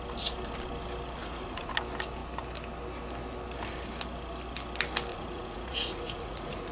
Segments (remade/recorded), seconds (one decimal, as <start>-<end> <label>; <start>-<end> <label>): 0.0-1.2 recorded; 1.2-1.7 remade; 1.7-5.1 recorded; 5.1-6.7 remade